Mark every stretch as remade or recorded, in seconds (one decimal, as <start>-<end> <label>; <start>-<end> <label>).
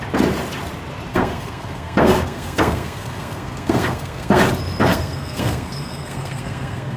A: 0.0-1.1 recorded; 1.1-4.4 remade; 4.4-4.9 recorded; 4.9-7.0 remade